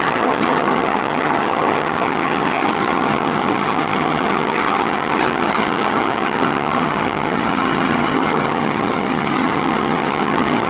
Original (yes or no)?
no